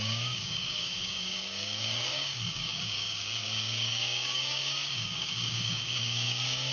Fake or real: fake